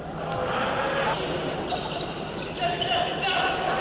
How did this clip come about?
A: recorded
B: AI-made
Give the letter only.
A